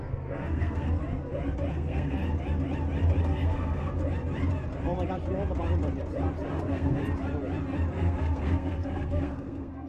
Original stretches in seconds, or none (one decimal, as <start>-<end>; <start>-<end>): 1.0-1.7; 2.2-3.2; 4.0-6.5; 7.0-7.9